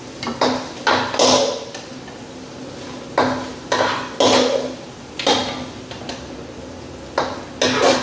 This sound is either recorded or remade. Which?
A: recorded